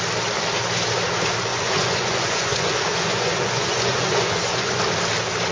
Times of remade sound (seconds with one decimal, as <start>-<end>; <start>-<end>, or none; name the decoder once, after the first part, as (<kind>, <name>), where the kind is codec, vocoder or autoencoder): 1.5-4.8 (vocoder, Vocos)